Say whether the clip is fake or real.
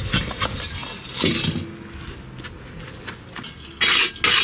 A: real